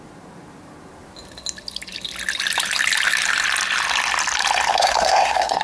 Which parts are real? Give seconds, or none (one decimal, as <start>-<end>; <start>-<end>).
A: 0.0-4.7